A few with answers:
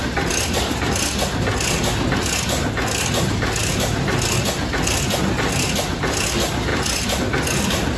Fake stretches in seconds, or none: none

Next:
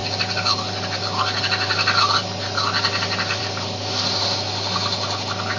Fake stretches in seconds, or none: none

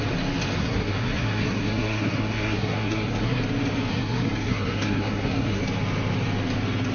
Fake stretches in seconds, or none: 0.6-3.4 (codec, SNAC); 3.9-5.6

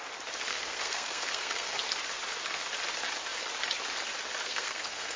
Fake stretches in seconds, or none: 0.5-1.8 (codec, SNAC); 4.5-5.2

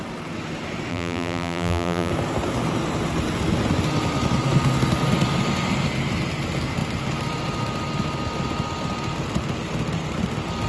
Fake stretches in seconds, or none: 0.9-2.1 (vocoder, BigVGAN v2)

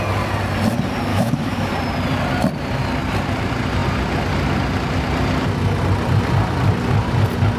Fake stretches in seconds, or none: 1.1-1.7 (autoencoder, DAC-VAE)